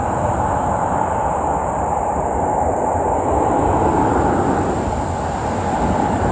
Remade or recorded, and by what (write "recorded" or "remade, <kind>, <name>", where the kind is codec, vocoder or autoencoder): recorded